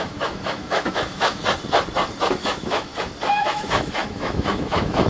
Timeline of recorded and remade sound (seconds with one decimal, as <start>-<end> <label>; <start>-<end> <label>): 0.0-1.4 remade; 1.4-2.2 recorded; 2.2-2.9 remade; 2.9-3.4 recorded; 3.4-5.1 remade